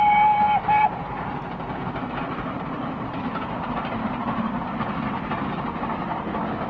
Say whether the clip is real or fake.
real